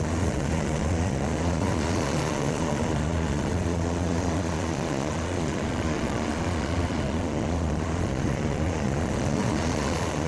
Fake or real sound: fake